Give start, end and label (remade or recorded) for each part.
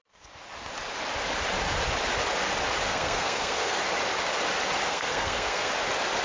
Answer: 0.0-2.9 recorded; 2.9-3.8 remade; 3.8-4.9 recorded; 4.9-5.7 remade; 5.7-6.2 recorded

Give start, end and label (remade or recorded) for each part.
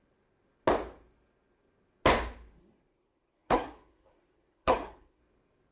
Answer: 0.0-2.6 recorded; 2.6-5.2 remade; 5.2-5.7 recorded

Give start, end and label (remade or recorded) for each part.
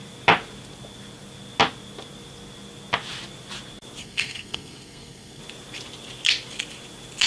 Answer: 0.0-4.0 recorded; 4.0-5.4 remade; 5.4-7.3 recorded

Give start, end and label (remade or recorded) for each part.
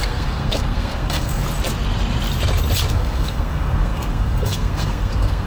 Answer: 0.0-1.4 remade; 1.4-2.9 recorded; 2.9-5.5 remade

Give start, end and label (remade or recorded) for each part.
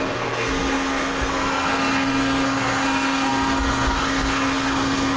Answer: 0.0-5.2 remade